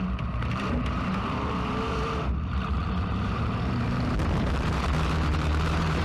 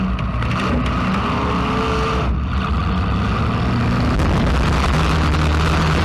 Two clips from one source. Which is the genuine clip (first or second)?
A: second